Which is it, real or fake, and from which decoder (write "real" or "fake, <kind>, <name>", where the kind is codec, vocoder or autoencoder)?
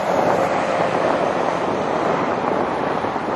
real